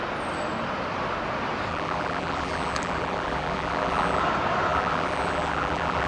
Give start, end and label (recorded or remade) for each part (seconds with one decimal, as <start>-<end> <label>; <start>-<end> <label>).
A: 0.0-1.7 recorded; 1.7-4.2 remade; 4.2-4.7 recorded; 4.7-6.1 remade